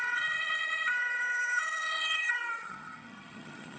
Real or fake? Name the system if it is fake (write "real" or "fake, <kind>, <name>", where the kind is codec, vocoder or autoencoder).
fake, vocoder, HiFi-GAN